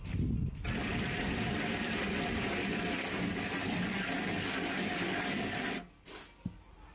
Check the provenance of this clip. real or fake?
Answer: real